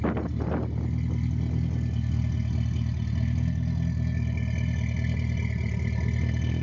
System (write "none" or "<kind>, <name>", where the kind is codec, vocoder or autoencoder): none